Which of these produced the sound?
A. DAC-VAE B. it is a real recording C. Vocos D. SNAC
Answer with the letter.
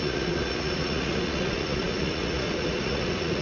C